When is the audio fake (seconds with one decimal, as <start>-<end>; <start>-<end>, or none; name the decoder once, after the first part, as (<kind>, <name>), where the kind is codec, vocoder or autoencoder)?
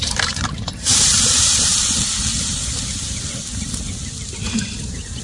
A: 0.0-1.7 (vocoder, BigVGAN v2); 4.8-5.2